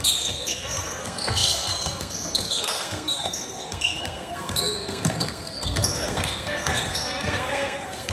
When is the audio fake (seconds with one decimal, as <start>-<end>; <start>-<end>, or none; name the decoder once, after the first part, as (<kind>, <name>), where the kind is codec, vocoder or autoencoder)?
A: 0.0-8.1 (codec, SNAC)